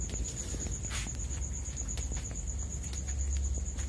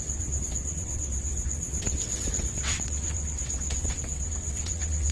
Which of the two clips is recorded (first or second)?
first